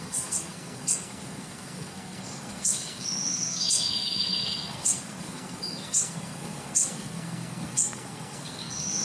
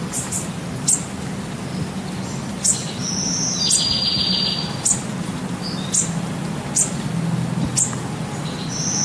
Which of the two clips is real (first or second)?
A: second